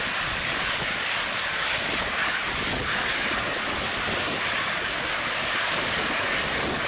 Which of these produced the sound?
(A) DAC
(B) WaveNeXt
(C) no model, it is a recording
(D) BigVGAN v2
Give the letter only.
A